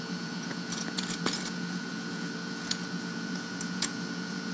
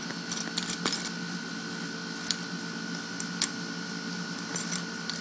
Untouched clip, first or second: second